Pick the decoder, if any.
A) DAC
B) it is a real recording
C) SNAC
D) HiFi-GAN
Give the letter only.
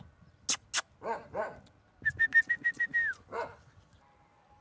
B